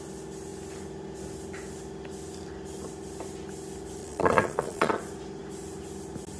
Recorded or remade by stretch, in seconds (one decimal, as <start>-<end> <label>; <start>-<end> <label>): 0.0-4.0 recorded; 4.0-5.0 remade; 5.0-6.4 recorded